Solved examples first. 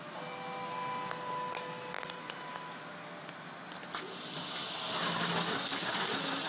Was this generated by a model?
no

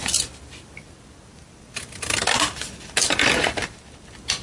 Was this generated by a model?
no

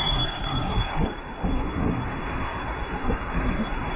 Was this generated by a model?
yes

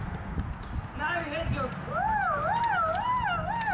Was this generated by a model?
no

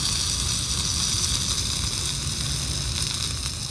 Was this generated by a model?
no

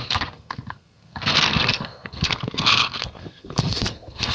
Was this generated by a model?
yes